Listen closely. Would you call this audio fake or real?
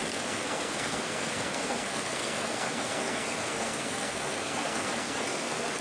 fake